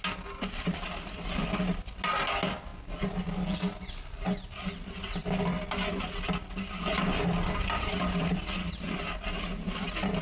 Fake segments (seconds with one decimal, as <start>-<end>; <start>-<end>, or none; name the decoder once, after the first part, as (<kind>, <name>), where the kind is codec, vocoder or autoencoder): none